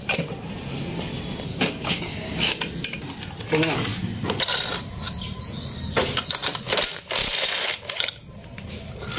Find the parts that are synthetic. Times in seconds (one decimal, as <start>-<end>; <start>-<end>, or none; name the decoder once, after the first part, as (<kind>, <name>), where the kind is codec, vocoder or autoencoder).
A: 1.5-2.6 (codec, DAC)